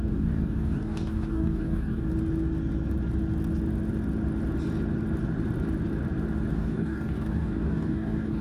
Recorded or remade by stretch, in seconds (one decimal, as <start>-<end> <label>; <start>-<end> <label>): 0.0-2.1 remade; 2.1-6.5 recorded; 6.5-8.4 remade